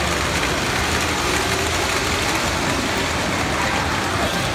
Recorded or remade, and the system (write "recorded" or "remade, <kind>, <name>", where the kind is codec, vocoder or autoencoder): recorded